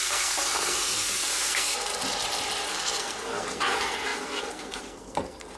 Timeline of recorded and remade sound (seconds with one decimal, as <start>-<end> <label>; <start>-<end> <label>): 0.0-1.9 remade; 1.9-2.7 recorded; 2.7-5.6 remade